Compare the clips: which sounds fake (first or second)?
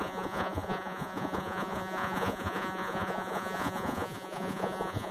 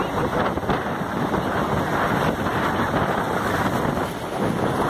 first